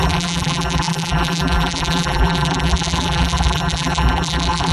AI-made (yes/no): yes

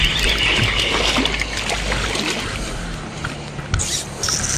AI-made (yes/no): no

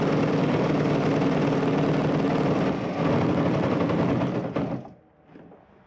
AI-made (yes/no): no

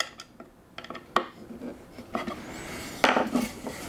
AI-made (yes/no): no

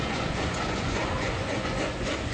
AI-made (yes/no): yes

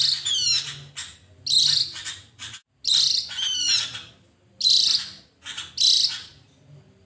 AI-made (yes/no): no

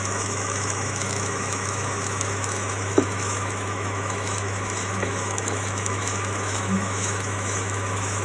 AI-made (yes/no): yes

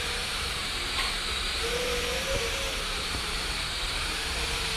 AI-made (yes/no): yes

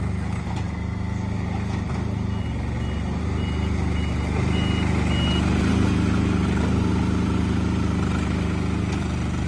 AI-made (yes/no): no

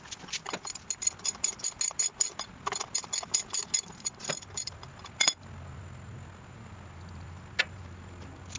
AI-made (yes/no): no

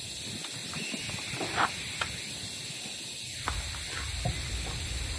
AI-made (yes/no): no